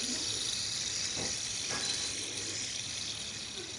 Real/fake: real